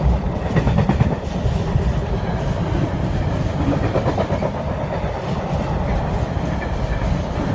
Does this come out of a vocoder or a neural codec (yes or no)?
yes